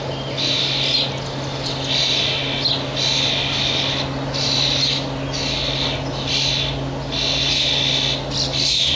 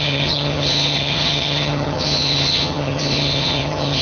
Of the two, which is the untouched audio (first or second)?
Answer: first